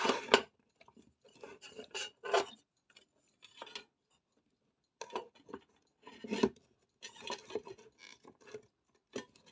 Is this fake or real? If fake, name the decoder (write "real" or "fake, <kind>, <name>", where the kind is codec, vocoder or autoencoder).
real